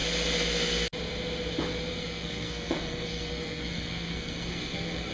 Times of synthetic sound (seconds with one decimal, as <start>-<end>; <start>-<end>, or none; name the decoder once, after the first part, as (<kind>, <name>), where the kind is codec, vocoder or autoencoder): 1.9-5.1 (codec, SNAC)

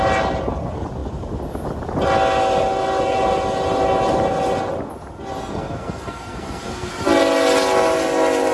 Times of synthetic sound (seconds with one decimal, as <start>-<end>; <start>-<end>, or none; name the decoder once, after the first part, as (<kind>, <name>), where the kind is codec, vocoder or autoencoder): 5.4-6.9 (codec, SNAC)

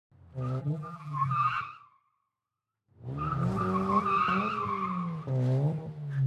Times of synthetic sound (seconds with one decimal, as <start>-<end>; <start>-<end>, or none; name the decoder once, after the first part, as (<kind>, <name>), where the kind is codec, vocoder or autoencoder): 0.6-1.6 (vocoder, BigVGAN v2)